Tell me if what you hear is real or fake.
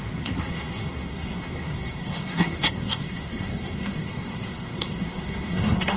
fake